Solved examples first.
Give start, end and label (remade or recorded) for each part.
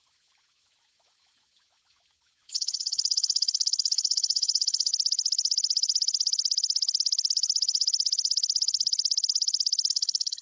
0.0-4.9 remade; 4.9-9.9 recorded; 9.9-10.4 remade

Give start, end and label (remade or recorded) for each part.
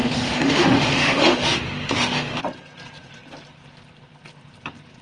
0.0-2.4 remade; 2.4-5.0 recorded